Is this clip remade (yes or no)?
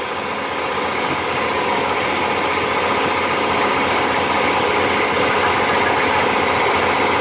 no